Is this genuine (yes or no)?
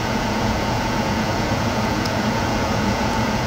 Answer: no